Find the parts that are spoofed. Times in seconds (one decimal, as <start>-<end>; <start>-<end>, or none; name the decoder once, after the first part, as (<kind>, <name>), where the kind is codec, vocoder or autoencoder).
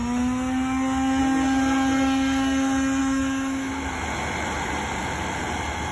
3.0-3.7 (autoencoder, DAC-VAE)